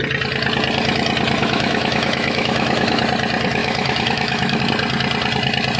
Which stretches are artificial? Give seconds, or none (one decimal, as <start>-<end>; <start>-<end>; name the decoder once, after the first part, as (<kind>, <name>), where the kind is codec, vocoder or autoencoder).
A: 1.4-3.0 (autoencoder, DAC-VAE); 3.6-4.6